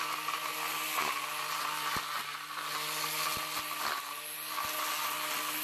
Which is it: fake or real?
real